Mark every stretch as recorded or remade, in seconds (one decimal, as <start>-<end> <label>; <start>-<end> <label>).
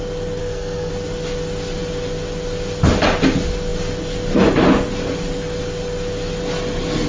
0.0-0.4 recorded; 0.4-0.9 remade; 0.9-7.1 recorded